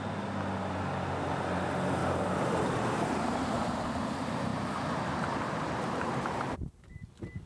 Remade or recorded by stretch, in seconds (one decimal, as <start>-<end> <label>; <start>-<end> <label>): 0.0-2.0 recorded; 2.0-3.8 remade; 3.8-4.5 recorded; 4.5-7.1 remade; 7.1-7.5 recorded